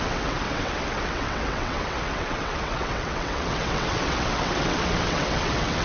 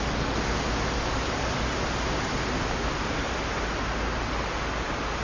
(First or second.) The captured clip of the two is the second